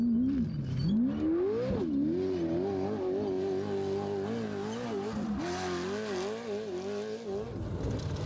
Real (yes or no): yes